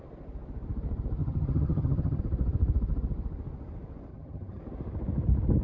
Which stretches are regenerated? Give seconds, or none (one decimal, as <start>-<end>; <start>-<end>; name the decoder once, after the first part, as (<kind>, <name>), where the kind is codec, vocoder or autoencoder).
1.2-2.2 (vocoder, HiFi-GAN); 4.1-4.6